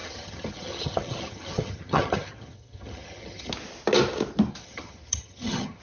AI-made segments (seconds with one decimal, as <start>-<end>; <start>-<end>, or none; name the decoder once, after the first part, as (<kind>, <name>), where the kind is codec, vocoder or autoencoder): 0.0-3.5 (vocoder, HiFi-GAN); 4.6-5.8